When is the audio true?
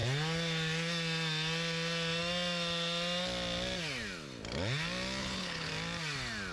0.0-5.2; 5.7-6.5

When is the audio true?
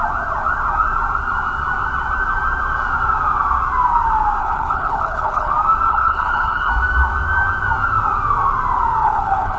0.0-4.4; 5.5-5.9; 6.7-9.0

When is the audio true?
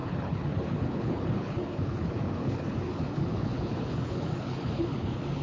none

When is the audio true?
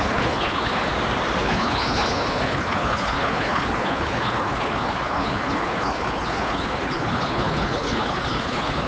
0.9-1.4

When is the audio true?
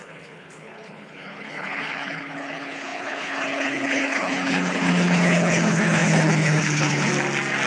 7.1-7.7